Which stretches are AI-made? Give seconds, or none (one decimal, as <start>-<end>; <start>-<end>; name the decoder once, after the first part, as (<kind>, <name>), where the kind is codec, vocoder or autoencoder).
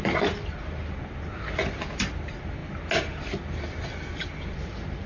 none